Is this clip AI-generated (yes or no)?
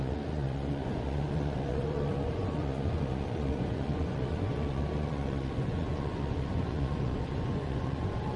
yes